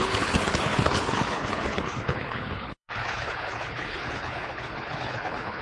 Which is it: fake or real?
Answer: fake